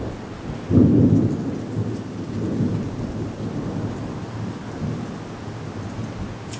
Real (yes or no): yes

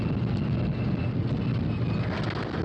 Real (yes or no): yes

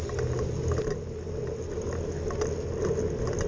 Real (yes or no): yes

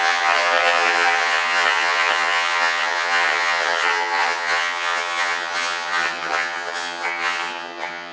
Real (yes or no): no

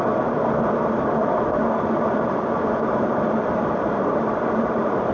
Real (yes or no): no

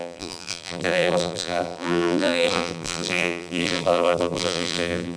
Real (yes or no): no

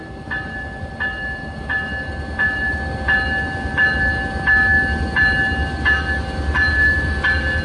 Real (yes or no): yes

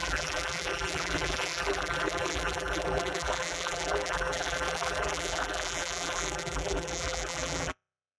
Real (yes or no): no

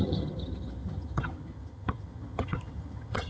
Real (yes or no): no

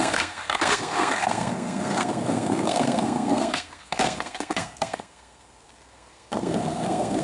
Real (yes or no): no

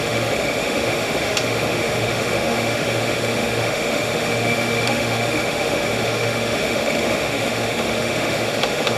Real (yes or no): no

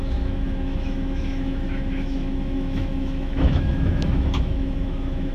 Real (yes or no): no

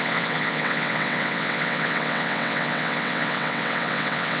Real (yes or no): no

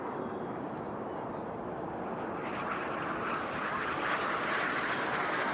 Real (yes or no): yes